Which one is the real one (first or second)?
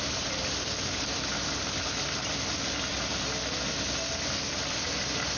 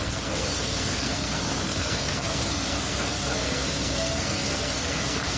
first